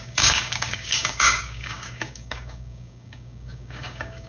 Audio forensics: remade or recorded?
remade